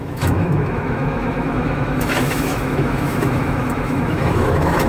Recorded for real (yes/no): no